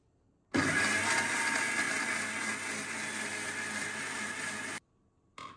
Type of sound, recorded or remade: recorded